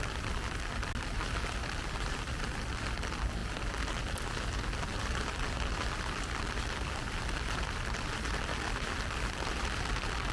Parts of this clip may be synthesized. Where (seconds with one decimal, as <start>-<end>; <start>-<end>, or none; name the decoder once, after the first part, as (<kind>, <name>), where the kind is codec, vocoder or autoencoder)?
none